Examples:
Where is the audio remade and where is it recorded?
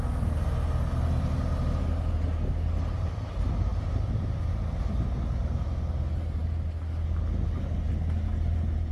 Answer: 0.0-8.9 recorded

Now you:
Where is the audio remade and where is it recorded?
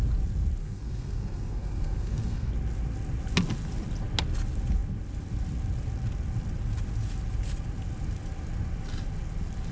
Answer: 0.0-0.6 recorded; 0.6-2.5 remade; 2.5-9.7 recorded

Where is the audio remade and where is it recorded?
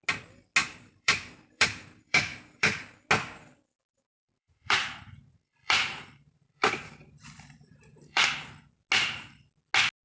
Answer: 0.0-0.6 recorded; 0.6-2.8 remade; 2.8-3.9 recorded; 3.9-8.5 remade; 8.5-10.0 recorded